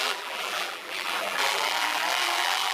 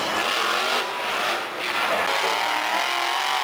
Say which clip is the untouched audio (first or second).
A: second